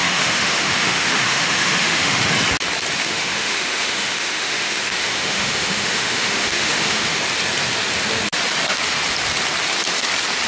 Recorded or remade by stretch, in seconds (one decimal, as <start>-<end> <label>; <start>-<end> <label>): 0.0-2.3 remade; 2.3-3.0 recorded; 3.0-7.2 remade; 7.2-10.5 recorded

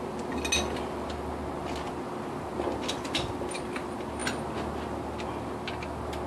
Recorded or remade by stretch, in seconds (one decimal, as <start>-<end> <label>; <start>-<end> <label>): 0.0-6.3 recorded

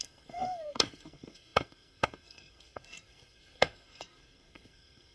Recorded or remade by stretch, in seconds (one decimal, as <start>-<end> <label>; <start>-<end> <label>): 0.0-5.1 remade

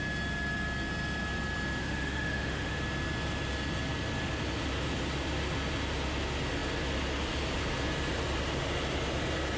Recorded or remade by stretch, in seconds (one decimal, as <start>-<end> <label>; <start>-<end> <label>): 0.0-1.8 recorded; 1.8-2.8 remade; 2.8-9.6 recorded

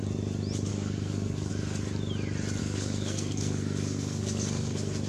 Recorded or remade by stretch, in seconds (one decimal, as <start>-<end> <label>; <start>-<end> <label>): 0.0-0.7 recorded; 0.7-1.5 remade; 1.5-2.6 recorded; 2.6-5.1 remade